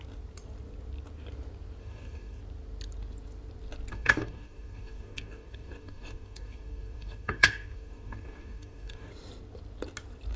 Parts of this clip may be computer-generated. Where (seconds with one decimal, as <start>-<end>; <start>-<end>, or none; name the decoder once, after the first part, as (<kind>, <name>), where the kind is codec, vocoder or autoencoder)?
1.8-2.4 (codec, DAC); 3.9-9.1